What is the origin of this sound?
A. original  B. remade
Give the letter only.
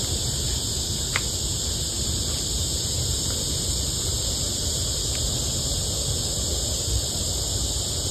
A